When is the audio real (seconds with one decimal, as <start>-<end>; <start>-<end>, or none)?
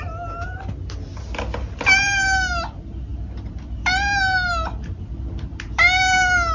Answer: 0.0-6.5